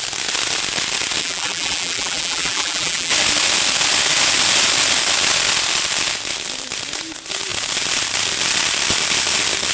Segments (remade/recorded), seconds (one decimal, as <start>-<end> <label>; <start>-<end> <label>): 0.0-1.2 recorded; 1.2-3.1 remade; 3.1-9.7 recorded